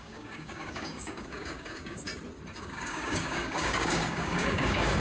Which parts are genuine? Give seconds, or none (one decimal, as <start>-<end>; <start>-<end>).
2.1-2.6